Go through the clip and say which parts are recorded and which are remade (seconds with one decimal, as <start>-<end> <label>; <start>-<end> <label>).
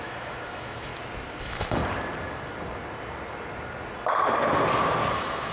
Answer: 0.0-0.9 remade; 0.9-1.4 recorded; 1.4-1.8 remade; 1.8-5.1 recorded; 5.1-5.5 remade